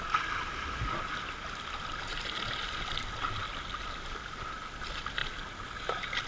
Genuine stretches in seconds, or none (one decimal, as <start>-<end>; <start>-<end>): 0.0-6.3